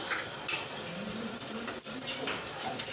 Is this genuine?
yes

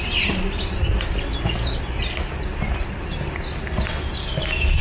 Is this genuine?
yes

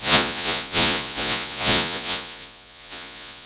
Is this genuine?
no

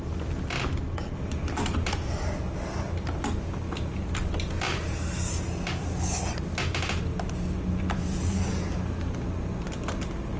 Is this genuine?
yes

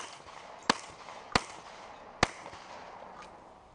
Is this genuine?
yes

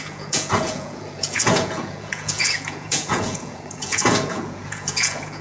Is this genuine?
no